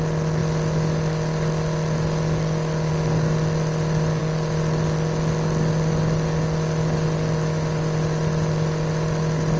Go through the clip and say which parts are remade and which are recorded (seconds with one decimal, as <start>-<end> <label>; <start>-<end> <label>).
0.0-9.6 recorded